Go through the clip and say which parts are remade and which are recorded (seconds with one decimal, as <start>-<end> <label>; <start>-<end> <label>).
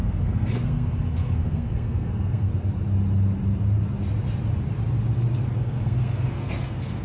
0.0-2.5 remade; 2.5-5.5 recorded; 5.5-7.0 remade